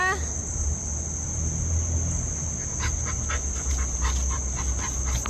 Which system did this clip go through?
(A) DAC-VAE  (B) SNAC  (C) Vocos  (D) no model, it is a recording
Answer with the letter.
D